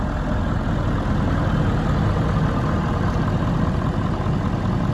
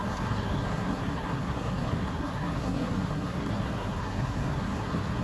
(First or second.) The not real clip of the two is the second